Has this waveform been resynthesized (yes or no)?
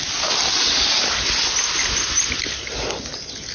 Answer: no